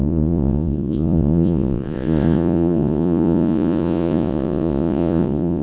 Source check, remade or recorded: remade